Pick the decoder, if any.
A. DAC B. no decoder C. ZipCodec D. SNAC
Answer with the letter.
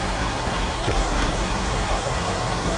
D